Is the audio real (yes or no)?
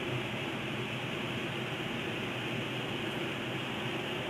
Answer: yes